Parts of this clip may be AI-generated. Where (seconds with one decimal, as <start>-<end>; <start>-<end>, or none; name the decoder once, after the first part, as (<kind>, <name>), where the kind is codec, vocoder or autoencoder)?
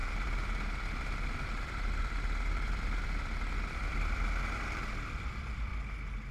0.0-5.7 (vocoder, BigVGAN v2)